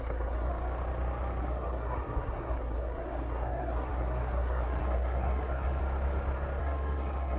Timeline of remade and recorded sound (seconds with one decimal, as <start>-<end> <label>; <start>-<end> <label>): 0.0-0.5 remade; 0.5-1.4 recorded; 1.4-5.8 remade; 5.8-6.6 recorded; 6.6-7.4 remade